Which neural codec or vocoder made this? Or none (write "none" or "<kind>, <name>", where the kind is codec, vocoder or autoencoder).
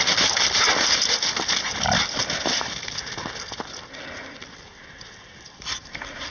none